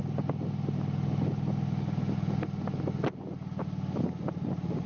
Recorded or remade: recorded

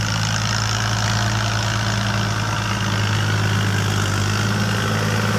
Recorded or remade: recorded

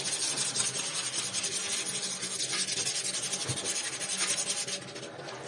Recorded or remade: recorded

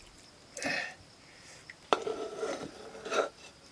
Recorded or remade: recorded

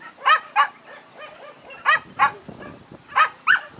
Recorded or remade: recorded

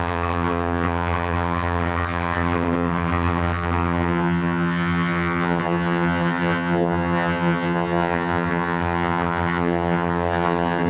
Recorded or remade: remade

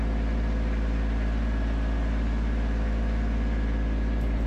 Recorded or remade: recorded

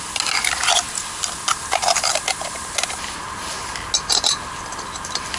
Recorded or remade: recorded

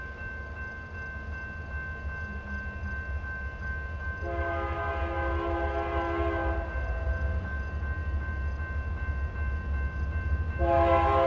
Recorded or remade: recorded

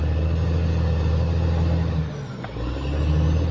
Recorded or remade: recorded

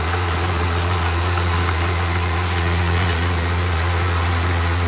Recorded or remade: remade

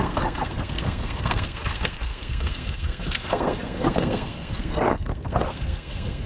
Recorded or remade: remade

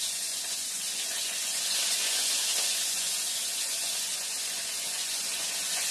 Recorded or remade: remade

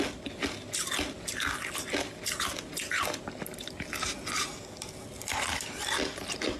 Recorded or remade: recorded